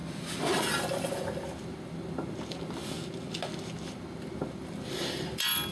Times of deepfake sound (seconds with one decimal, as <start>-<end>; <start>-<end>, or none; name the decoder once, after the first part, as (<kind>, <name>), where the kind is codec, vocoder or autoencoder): none